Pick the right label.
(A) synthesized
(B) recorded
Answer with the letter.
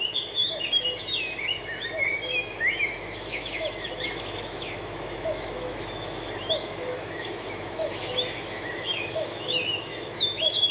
A